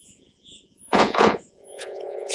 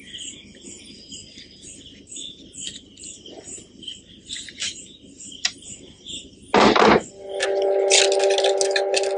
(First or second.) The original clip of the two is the second